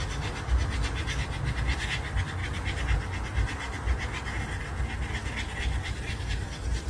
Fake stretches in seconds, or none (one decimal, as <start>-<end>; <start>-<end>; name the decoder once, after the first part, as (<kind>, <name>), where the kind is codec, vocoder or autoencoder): none